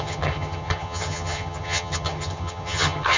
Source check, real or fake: fake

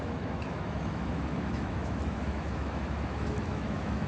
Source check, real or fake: fake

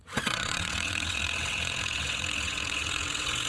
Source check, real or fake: fake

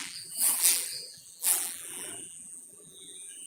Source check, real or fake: fake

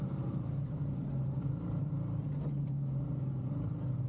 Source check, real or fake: fake